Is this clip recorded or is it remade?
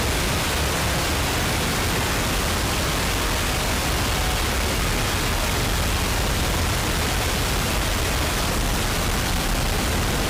recorded